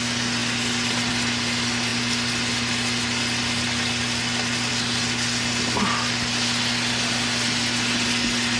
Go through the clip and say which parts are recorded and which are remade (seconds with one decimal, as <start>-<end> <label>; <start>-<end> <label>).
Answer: 0.0-8.6 recorded